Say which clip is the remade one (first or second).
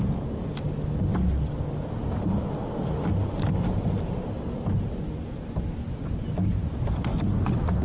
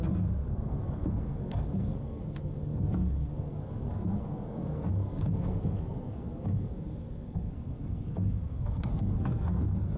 second